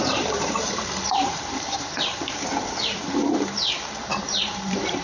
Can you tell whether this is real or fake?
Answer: fake